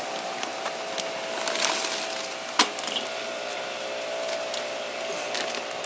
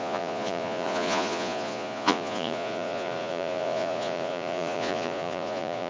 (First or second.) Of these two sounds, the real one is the first